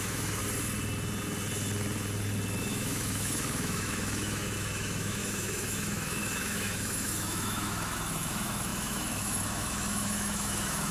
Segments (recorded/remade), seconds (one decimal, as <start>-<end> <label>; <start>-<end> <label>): 0.0-0.4 remade; 0.4-2.6 recorded; 2.6-10.9 remade